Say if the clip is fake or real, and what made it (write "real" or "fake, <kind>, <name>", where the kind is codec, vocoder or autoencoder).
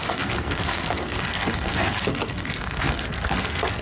fake, codec, SNAC